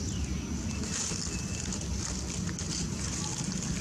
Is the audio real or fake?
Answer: real